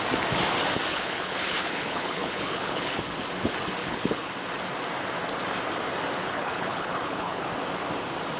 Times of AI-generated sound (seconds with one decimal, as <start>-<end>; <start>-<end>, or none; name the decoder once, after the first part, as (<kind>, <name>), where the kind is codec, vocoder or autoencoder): 0.9-3.0 (codec, HILCodec); 3.8-4.3; 6.2-7.5